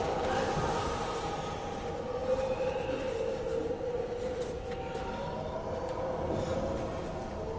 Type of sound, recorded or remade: recorded